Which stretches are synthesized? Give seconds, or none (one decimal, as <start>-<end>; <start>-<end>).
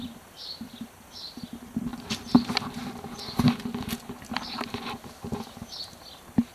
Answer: none